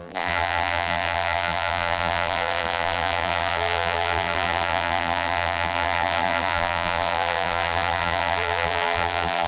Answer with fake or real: fake